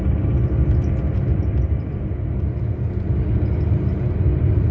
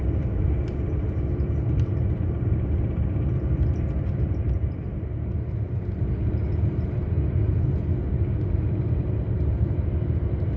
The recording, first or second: first